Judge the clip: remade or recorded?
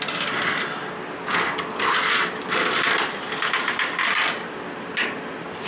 recorded